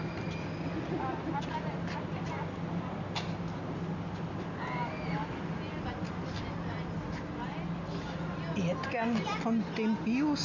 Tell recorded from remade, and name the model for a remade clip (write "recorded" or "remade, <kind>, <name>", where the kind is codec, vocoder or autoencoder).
recorded